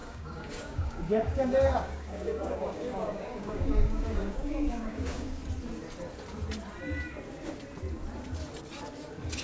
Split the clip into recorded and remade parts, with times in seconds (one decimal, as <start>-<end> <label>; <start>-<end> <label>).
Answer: 0.0-5.4 remade; 5.4-9.4 recorded